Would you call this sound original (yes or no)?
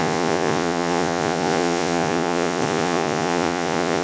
no